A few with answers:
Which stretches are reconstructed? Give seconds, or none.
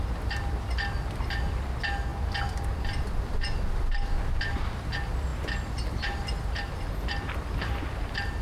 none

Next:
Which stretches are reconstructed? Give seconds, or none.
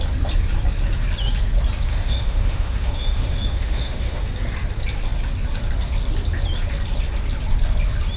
1.9-4.2 (autoencoder, DAC-VAE)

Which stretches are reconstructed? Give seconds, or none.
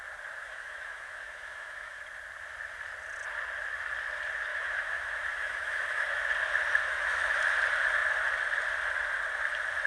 0.4-2.0 (autoencoder, DAC-VAE); 4.5-6.3; 6.8-7.4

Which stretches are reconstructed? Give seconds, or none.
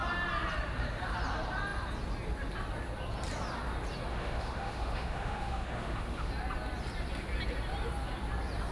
4.1-6.3 (autoencoder, DAC-VAE)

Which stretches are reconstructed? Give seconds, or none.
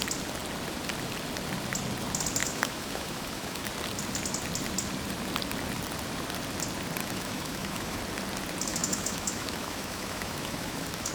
2.4-3.7 (autoencoder, DAC-VAE); 7.0-8.0; 8.7-11.1